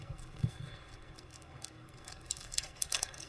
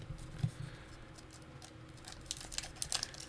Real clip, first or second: second